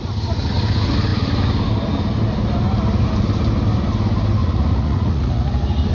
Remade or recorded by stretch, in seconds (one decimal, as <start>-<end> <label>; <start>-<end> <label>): 0.0-4.4 recorded; 4.4-5.5 remade; 5.5-5.9 recorded